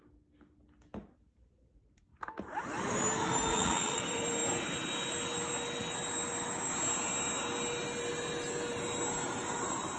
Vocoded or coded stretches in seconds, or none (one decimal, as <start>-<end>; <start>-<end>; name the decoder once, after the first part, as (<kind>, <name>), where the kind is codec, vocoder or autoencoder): 3.5-4.0 (vocoder, Vocos)